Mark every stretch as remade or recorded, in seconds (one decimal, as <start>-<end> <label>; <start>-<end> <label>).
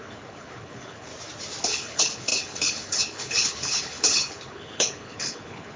0.0-1.1 remade; 1.1-1.6 recorded; 1.6-5.8 remade